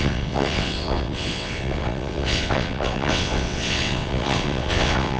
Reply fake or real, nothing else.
fake